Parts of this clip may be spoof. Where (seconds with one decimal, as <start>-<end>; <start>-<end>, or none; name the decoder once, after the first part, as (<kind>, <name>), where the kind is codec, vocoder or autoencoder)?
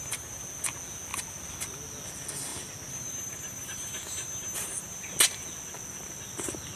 none